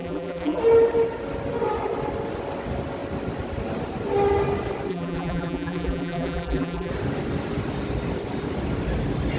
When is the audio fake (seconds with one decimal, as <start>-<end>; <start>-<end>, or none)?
0.0-0.6; 4.9-6.9